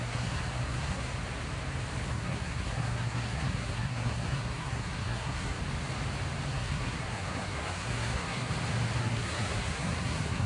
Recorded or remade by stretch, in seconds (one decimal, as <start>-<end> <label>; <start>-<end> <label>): 0.0-1.1 remade; 1.1-2.1 recorded; 2.1-5.6 remade; 5.6-6.5 recorded; 6.5-8.5 remade; 8.5-9.0 recorded; 9.0-10.5 remade